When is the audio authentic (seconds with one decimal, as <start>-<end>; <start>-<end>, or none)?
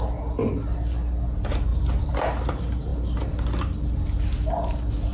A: 0.0-1.7; 2.2-5.1